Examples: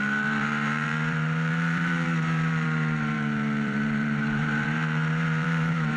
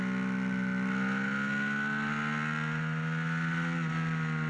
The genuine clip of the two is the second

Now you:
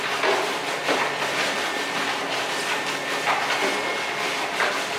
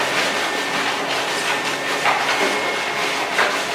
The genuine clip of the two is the second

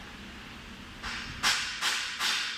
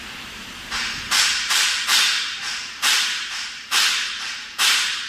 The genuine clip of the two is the first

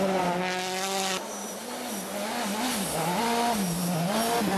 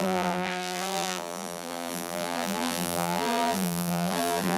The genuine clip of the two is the first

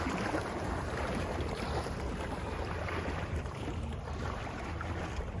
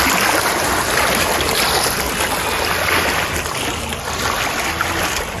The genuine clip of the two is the second